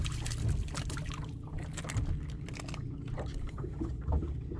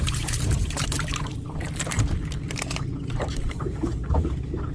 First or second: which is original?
first